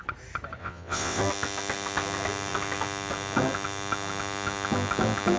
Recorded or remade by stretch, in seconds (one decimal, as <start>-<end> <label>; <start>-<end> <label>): 0.0-0.6 recorded; 0.6-1.2 remade; 1.2-5.4 recorded